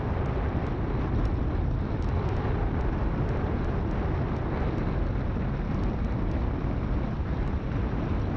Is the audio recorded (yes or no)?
yes